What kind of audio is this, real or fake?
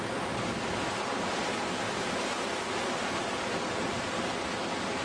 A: real